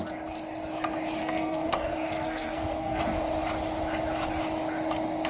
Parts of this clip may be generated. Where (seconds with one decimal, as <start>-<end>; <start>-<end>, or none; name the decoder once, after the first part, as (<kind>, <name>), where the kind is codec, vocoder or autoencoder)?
1.2-3.0 (codec, SNAC)

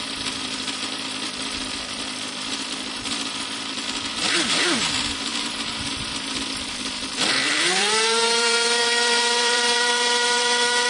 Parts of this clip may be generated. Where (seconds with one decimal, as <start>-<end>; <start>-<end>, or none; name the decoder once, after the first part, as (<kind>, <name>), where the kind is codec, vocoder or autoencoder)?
0.0-10.9 (vocoder, BigVGAN v2)

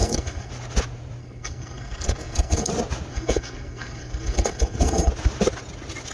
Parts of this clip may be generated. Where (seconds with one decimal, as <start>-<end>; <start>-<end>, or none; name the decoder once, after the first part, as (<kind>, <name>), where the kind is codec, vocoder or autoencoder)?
0.0-0.5 (codec, SNAC); 1.2-2.7; 3.1-5.1

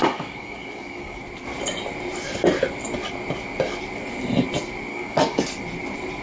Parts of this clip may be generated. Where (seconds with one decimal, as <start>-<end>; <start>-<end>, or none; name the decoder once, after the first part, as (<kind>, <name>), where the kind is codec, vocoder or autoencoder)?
0.0-1.2 (codec, DAC); 4.9-5.4

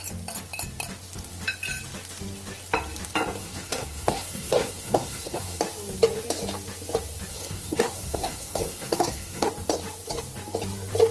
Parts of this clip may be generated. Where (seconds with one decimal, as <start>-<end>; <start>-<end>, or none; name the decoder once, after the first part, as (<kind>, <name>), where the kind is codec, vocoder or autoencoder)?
3.4-5.6 (codec, SNAC); 7.3-9.5

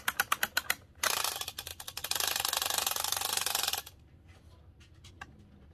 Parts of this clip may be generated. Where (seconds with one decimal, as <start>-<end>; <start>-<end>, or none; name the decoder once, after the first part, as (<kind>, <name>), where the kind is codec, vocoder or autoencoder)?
none

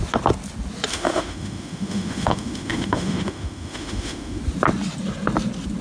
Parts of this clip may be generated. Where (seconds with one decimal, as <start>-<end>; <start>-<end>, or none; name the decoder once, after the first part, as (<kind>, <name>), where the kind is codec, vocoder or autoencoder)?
0.9-4.4 (autoencoder, DAC-VAE)